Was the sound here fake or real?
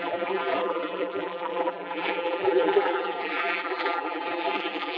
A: fake